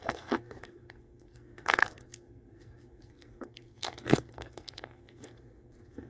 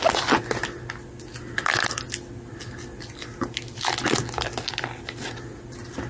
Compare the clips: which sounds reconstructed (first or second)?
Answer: first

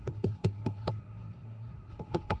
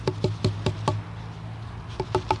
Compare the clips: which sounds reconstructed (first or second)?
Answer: first